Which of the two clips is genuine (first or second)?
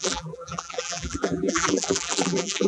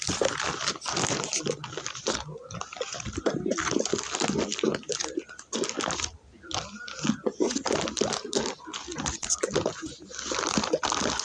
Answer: second